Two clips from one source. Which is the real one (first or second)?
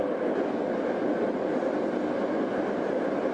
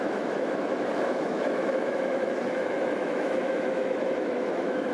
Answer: first